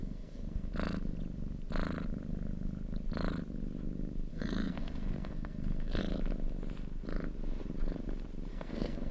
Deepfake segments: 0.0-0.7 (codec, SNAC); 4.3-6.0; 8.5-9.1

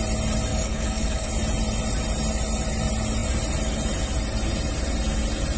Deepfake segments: 0.5-1.3 (codec, DAC)

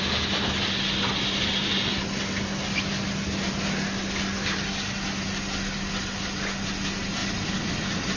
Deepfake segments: none

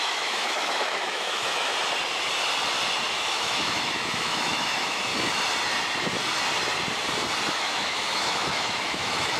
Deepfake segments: 0.0-1.7 (autoencoder, DAC-VAE); 3.3-5.1; 7.5-9.4

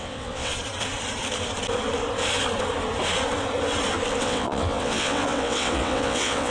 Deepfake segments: 0.0-0.5 (vocoder, WaveNeXt); 4.2-6.5

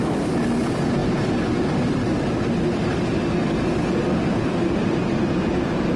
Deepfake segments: none

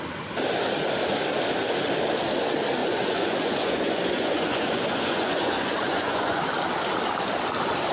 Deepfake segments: 2.8-6.4 (vocoder, Vocos)